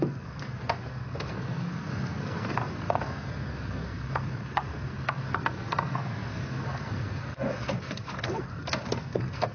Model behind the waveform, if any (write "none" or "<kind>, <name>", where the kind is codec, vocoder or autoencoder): codec, SNAC